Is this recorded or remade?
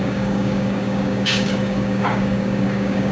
remade